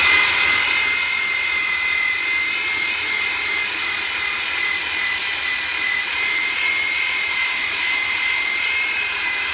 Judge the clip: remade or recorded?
remade